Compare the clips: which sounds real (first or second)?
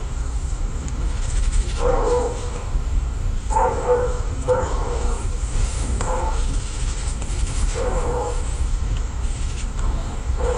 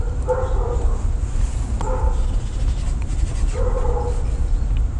second